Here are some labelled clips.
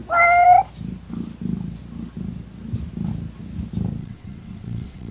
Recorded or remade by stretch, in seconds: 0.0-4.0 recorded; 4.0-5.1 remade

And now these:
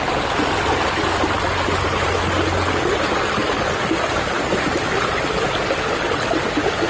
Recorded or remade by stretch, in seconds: 0.0-6.9 recorded

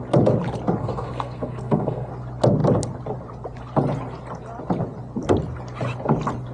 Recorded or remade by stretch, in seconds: 0.0-0.8 recorded; 0.8-2.1 remade; 2.1-6.5 recorded

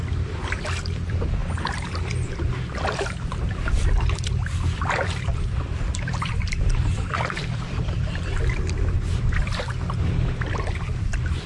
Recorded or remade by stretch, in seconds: 0.0-1.4 remade; 1.4-2.4 recorded; 2.4-8.1 remade; 8.1-9.0 recorded; 9.0-11.5 remade

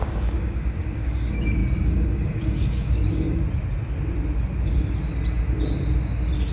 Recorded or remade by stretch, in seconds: 0.0-3.4 remade; 3.4-6.5 recorded

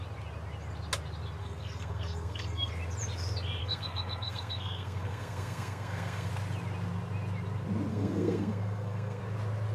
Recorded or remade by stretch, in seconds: 0.0-1.4 recorded; 1.4-2.7 remade; 2.7-3.6 recorded; 3.6-6.3 remade; 6.3-7.9 recorded; 7.9-9.2 remade; 9.2-9.7 recorded

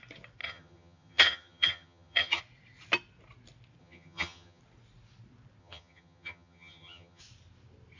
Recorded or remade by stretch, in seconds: 0.0-0.4 recorded; 0.4-2.4 remade; 2.4-3.8 recorded; 3.8-4.6 remade; 4.6-5.6 recorded; 5.6-7.2 remade; 7.2-8.0 recorded